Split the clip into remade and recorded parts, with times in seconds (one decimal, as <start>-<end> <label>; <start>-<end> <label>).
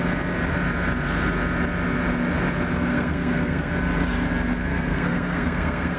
0.0-2.9 recorded; 2.9-3.7 remade; 3.7-4.6 recorded; 4.6-6.0 remade